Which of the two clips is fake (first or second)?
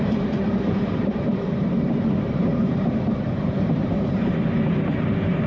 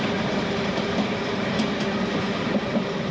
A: first